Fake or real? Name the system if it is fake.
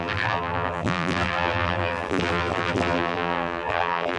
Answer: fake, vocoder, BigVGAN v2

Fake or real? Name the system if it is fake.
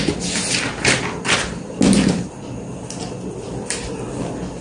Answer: real